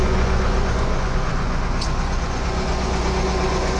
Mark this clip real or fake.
fake